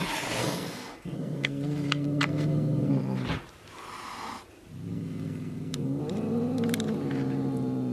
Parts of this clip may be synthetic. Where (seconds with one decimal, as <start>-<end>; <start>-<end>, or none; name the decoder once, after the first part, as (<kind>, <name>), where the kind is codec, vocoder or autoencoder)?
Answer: 0.4-2.9 (codec, SNAC); 4.9-6.0